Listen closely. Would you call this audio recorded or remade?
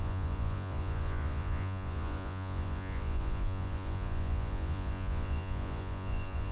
remade